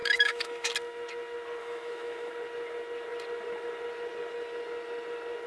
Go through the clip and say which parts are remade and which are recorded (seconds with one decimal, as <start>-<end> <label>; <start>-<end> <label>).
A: 0.0-0.7 remade; 0.7-1.6 recorded; 1.6-2.3 remade; 2.3-5.5 recorded